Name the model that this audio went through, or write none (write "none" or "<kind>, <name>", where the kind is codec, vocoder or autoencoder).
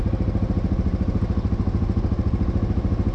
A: none